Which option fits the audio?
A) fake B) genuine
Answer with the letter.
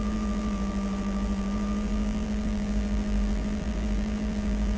A